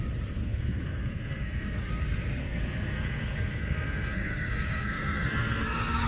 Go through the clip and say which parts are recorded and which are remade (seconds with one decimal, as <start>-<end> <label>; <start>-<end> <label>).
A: 0.0-0.4 recorded; 0.4-1.9 remade; 1.9-2.4 recorded; 2.4-6.1 remade